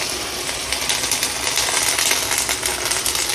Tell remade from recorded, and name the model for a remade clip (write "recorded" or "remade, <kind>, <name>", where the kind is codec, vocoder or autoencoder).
recorded